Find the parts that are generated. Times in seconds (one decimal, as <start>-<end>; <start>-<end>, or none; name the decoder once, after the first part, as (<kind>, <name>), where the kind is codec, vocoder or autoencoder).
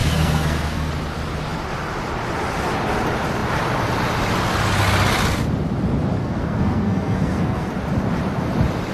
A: 0.0-0.9 (codec, SNAC); 6.2-7.7